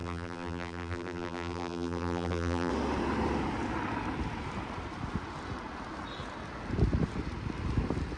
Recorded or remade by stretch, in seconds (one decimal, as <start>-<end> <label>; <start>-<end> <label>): 0.0-2.7 remade; 2.7-8.2 recorded